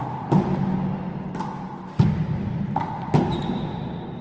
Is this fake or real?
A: real